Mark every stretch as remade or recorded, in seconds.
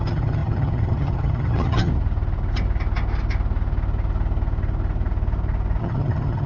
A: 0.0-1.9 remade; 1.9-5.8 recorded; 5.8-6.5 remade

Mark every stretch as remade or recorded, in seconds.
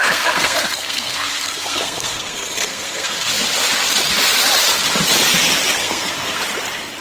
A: 0.0-3.3 remade; 3.3-5.8 recorded; 5.8-6.4 remade; 6.4-7.0 recorded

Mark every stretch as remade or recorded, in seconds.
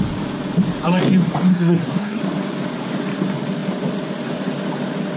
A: 0.0-1.5 recorded; 1.5-2.2 remade; 2.2-5.2 recorded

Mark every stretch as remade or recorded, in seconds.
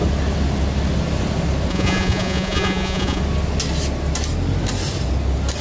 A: 0.0-1.7 recorded; 1.7-3.2 remade; 3.2-5.6 recorded